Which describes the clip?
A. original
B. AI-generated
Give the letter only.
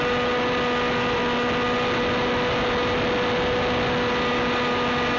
A